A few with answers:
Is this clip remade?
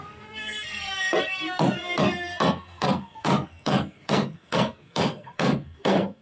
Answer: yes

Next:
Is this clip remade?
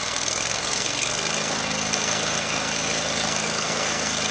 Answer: yes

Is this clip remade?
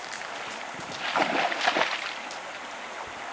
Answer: no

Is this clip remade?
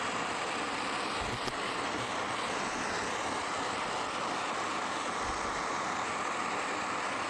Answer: no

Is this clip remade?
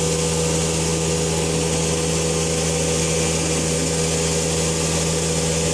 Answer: no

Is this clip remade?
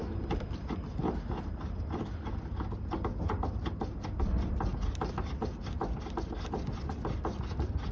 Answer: no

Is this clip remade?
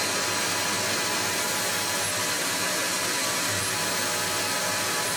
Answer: no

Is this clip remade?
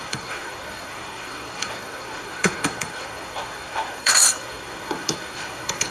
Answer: yes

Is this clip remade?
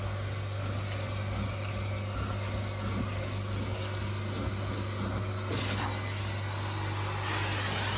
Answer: no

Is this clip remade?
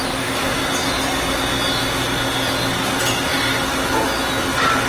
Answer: no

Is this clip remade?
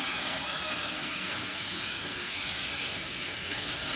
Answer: yes